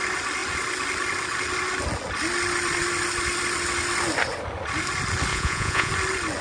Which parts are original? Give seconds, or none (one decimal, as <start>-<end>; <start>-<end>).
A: 0.0-5.3; 5.9-6.4